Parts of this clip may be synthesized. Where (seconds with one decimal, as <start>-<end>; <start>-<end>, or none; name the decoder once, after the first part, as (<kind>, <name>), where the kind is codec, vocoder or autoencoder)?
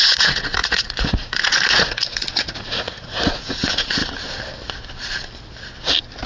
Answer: 0.0-4.0 (vocoder, Vocos)